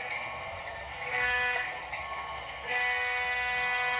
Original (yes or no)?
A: no